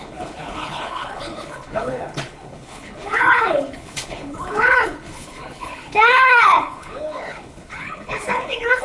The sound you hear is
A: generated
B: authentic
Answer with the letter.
A